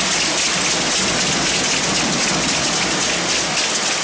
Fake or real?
real